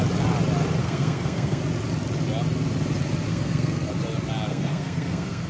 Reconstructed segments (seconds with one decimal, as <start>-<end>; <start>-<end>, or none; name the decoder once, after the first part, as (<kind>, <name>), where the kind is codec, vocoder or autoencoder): 0.8-1.6 (codec, SNAC); 3.3-3.9; 4.5-5.5

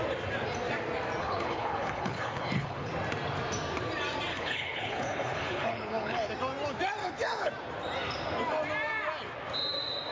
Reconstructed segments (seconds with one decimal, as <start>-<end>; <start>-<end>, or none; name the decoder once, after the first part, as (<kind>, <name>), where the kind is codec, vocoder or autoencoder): 1.2-2.9 (codec, HILCodec); 4.3-6.3; 7.0-7.5

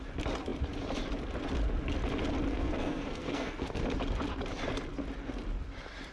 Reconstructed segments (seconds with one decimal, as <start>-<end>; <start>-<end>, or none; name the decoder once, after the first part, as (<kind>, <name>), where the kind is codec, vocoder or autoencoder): 2.5-3.8 (codec, SNAC)

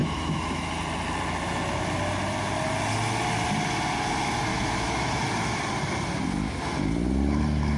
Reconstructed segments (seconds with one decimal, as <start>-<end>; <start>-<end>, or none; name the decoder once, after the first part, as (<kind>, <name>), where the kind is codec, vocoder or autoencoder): 0.0-0.7 (autoencoder, DAC-VAE); 4.5-5.2

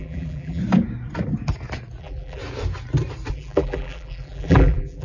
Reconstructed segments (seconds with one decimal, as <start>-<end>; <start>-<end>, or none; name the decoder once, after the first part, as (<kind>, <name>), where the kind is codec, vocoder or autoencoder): 0.0-0.6 (vocoder, BigVGAN v2); 2.0-2.4; 3.3-5.0